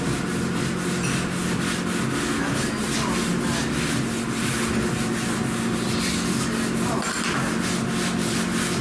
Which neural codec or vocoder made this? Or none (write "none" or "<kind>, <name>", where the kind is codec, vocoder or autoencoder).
none